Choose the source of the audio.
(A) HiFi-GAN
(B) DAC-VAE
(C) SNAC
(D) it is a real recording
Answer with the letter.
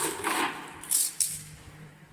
B